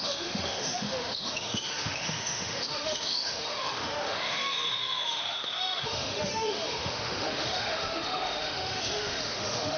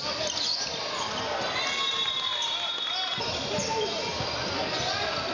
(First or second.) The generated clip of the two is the first